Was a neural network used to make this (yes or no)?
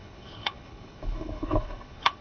yes